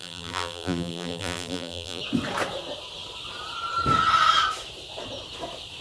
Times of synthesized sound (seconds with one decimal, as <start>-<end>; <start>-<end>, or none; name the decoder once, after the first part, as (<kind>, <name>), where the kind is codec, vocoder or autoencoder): 0.0-2.0 (vocoder, BigVGAN v2)